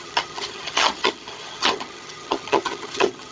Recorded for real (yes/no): no